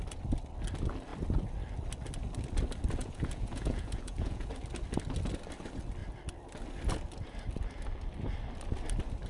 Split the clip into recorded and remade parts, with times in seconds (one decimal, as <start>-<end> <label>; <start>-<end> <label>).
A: 0.0-3.0 recorded; 3.0-4.5 remade; 4.5-9.3 recorded